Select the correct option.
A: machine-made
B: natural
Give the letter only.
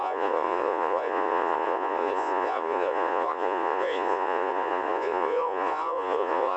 A